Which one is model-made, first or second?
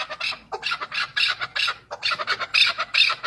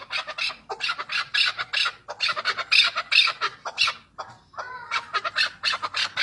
first